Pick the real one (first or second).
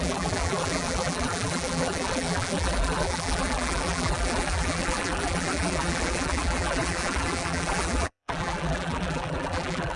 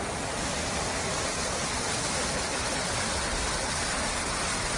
second